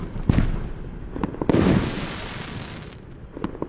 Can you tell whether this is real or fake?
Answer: real